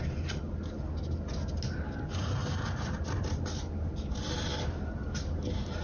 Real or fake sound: real